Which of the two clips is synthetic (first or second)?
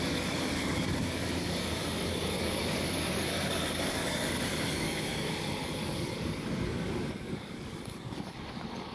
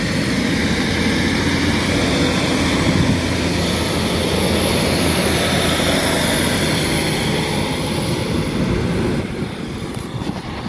first